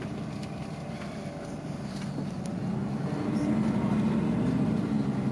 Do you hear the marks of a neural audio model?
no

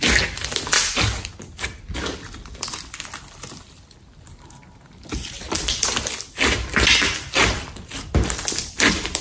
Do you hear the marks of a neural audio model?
no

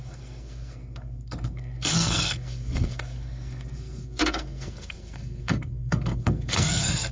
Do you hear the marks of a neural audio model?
yes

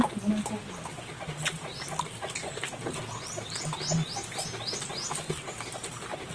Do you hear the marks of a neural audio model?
no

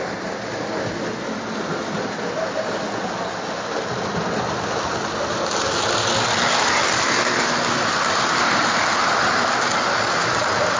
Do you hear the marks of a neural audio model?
no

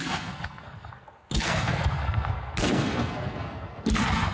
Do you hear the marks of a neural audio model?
yes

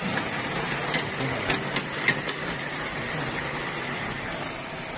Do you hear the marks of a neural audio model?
no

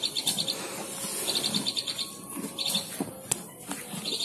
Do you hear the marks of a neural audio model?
no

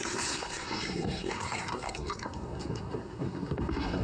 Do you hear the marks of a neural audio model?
yes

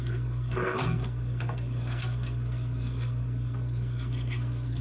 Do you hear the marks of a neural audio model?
yes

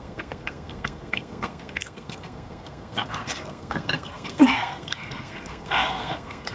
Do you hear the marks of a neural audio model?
yes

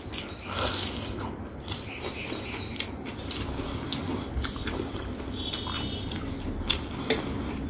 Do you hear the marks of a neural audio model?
no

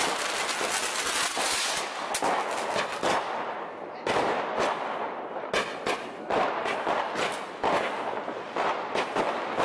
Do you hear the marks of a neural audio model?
no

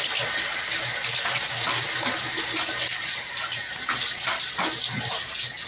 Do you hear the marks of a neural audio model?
no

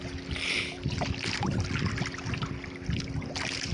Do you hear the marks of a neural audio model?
no